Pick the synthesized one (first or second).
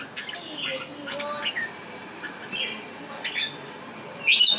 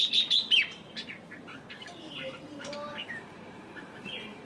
second